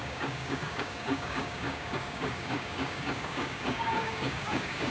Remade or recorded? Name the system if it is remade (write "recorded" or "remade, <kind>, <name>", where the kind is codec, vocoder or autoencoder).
remade, codec, DAC